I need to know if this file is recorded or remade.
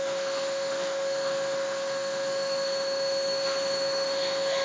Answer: remade